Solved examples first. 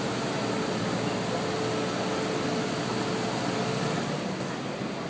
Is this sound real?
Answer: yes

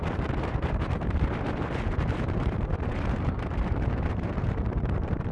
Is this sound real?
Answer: no